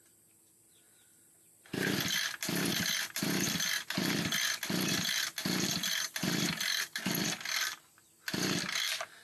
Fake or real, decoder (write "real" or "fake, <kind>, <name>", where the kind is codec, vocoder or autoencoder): fake, vocoder, BigVGAN v2